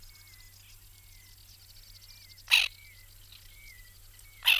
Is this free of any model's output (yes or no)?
yes